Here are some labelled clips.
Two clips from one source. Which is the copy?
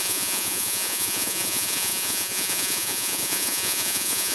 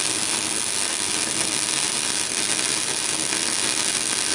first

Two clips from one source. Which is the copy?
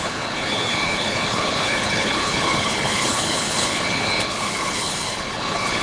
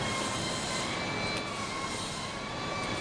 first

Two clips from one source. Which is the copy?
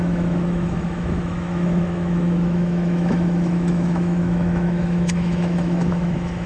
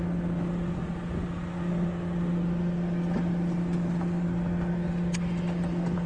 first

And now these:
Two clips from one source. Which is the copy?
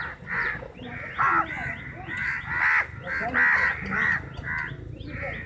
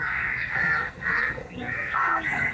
second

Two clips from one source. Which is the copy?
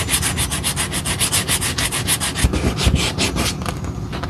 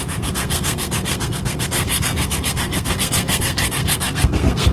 second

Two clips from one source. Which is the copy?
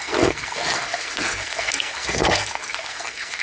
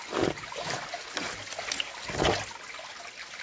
first